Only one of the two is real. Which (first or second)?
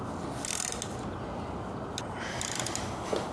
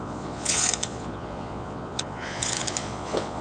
first